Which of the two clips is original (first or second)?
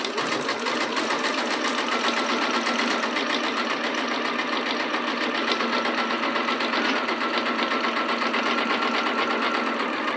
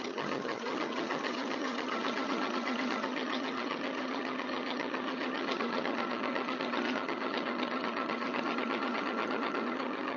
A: first